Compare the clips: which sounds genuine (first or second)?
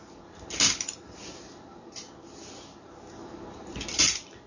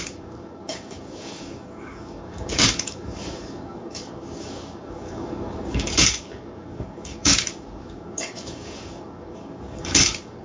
first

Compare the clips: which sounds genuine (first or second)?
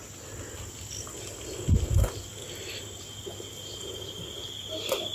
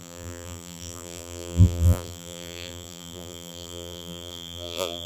first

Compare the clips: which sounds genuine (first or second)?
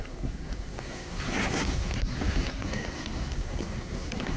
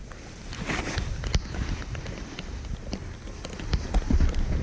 second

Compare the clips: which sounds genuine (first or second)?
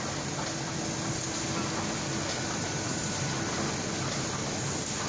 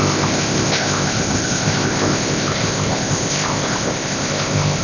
first